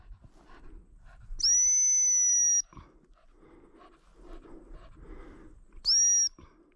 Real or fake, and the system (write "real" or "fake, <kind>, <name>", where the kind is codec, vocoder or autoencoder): real